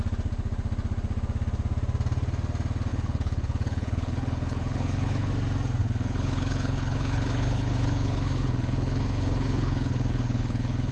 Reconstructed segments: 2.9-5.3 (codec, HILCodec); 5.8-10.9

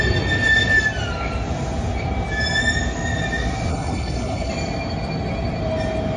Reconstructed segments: 3.7-4.5 (codec, HILCodec)

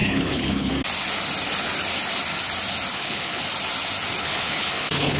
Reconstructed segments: 0.0-0.7 (codec, HILCodec); 2.9-3.4; 4.2-5.2

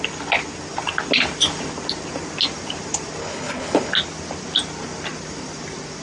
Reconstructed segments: 3.2-3.9 (codec, HILCodec)